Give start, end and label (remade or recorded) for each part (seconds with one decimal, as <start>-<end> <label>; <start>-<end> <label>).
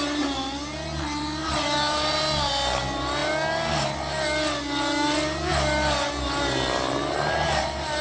0.0-1.4 recorded; 1.4-2.5 remade; 2.5-8.0 recorded